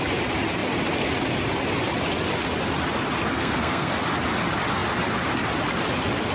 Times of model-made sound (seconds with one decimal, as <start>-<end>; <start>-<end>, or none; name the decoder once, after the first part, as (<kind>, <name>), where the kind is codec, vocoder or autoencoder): 3.3-3.9 (codec, SNAC)